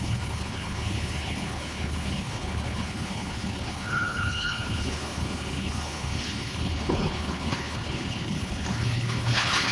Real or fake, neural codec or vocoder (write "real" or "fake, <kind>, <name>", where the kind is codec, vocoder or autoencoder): fake, codec, HILCodec